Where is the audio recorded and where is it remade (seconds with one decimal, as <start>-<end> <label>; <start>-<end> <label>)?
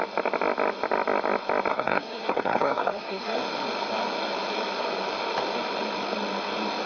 0.0-1.7 recorded; 1.7-3.4 remade; 3.4-6.9 recorded